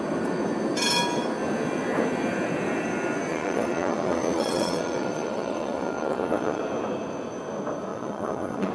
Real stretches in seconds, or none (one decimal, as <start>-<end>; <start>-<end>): 0.0-3.3; 6.6-7.9